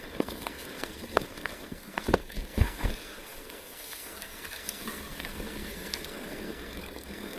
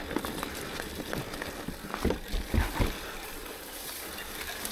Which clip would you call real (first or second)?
second